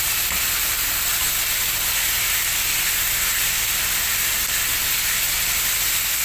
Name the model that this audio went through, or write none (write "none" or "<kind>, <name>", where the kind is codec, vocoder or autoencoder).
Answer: none